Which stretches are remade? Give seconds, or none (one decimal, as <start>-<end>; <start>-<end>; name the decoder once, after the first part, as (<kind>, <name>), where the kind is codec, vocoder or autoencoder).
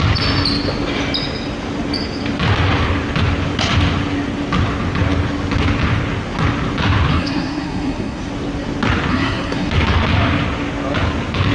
7.1-8.3 (codec, SNAC); 9.1-9.7